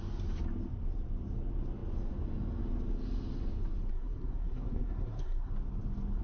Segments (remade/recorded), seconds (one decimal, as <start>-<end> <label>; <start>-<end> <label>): 0.0-3.9 recorded; 3.9-5.5 remade; 5.5-6.2 recorded